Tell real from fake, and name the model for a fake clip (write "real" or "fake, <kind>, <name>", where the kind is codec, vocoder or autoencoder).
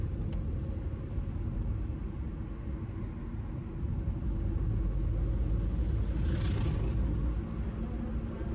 real